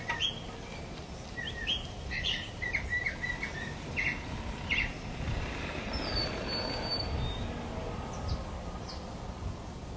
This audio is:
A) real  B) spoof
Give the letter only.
A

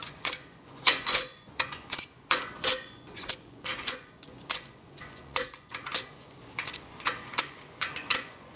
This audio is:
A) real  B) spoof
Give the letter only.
B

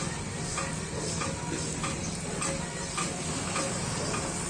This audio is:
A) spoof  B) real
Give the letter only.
B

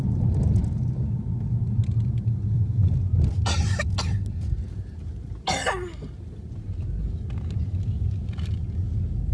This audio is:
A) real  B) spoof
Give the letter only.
A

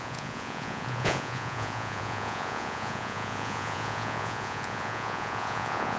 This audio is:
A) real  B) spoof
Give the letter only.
B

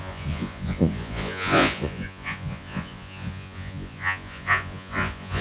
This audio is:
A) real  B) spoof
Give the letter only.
B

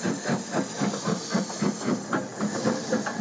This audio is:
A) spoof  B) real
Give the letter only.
B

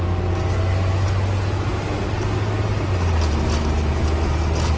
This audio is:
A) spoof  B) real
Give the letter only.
B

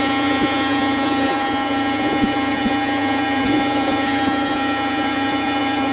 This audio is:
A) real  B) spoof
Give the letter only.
B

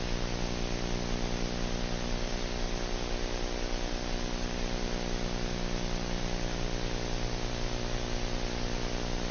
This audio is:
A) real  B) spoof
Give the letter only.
A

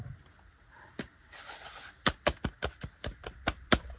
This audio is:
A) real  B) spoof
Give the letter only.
A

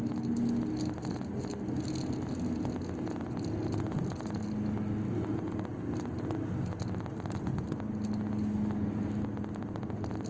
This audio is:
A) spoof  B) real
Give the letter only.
B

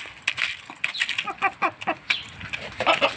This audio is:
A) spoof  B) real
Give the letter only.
B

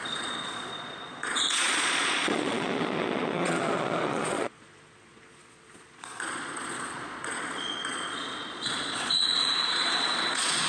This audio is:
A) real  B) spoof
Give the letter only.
B